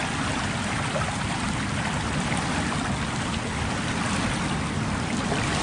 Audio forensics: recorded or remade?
recorded